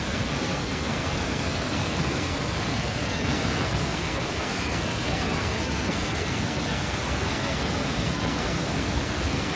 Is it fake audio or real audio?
fake